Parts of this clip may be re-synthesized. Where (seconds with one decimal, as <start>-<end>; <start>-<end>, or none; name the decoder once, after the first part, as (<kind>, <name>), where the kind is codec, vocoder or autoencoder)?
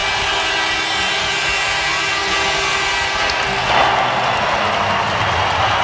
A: none